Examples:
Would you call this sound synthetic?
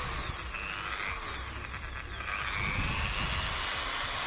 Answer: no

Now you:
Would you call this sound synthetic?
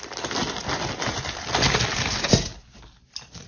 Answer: no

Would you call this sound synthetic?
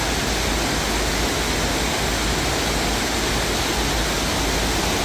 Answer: no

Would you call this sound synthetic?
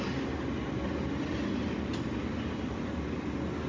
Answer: no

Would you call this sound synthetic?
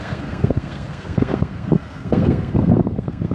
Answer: yes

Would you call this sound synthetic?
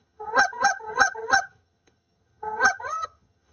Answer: yes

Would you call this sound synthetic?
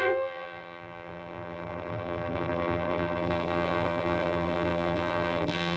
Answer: yes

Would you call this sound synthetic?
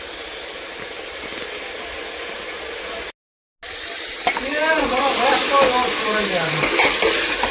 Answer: no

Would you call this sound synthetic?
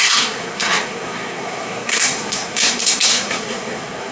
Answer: yes